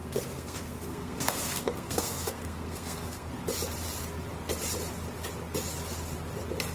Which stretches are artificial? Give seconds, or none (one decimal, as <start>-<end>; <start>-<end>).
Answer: 0.0-3.3